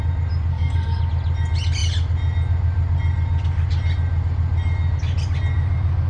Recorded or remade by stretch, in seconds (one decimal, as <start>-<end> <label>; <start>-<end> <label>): 0.0-0.5 recorded; 0.5-1.0 remade; 1.0-6.1 recorded